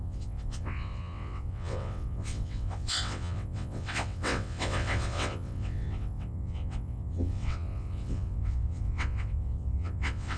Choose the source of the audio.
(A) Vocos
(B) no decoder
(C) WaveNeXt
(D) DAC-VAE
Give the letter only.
C